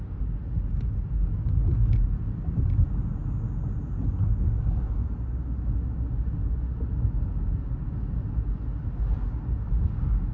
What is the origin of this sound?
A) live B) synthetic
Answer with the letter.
A